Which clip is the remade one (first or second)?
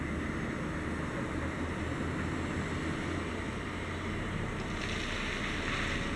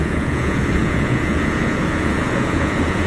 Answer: second